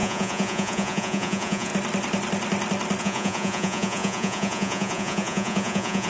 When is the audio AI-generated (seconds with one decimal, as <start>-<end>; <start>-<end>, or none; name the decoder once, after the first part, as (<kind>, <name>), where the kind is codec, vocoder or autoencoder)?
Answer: 0.0-1.7 (vocoder, Vocos); 3.0-6.1